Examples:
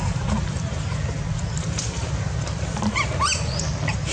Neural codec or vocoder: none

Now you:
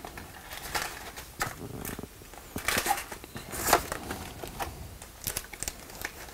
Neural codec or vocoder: none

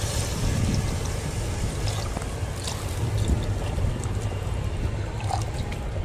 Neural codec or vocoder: none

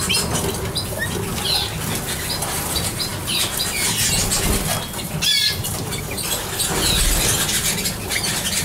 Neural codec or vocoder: none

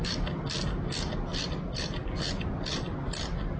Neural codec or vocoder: none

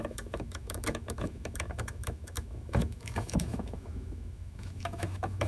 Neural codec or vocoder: autoencoder, DAC-VAE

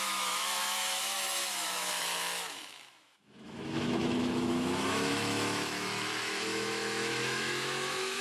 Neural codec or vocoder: autoencoder, DAC-VAE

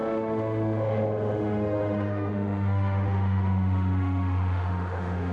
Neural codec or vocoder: autoencoder, DAC-VAE